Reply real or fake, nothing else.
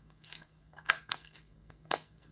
fake